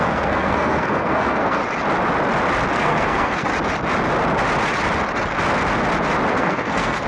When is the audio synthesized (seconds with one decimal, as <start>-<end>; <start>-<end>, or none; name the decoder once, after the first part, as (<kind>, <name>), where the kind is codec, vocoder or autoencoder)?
0.0-1.6 (codec, SNAC); 2.7-3.5; 6.3-7.1

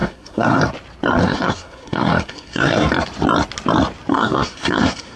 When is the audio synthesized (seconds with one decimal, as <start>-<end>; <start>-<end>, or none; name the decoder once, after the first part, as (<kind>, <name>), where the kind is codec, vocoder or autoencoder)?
0.0-0.6 (codec, SNAC); 1.2-2.9; 4.1-5.2

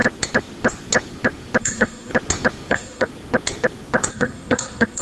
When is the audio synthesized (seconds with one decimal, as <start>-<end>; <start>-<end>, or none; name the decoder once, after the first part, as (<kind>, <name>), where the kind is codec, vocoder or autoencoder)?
1.6-2.1 (codec, SNAC); 2.7-3.1; 4.1-5.0

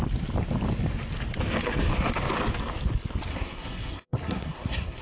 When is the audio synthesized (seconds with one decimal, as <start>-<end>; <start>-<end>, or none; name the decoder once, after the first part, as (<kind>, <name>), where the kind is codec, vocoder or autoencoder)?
3.3-5.0 (codec, SNAC)

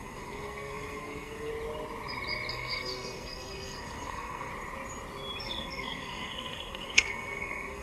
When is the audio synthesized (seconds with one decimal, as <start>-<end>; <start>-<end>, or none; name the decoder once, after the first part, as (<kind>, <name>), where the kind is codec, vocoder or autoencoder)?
0.0-1.5 (codec, SNAC); 2.5-4.5; 5.4-7.8